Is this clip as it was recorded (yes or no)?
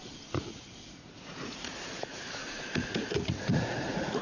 no